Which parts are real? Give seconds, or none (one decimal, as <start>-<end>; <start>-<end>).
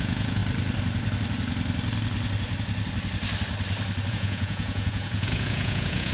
0.4-4.1